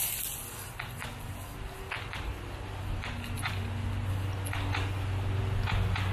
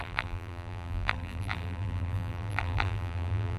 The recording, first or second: first